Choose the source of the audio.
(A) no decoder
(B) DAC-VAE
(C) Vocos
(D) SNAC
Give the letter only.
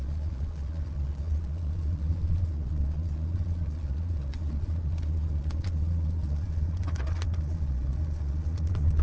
C